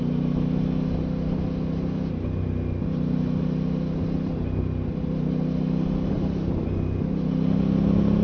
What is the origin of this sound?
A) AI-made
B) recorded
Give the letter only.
B